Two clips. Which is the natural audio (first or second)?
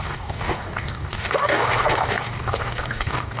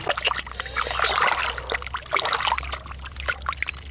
second